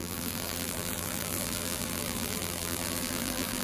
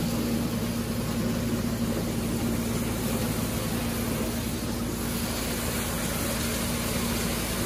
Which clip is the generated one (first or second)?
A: first